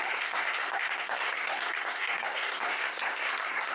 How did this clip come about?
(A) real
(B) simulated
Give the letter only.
B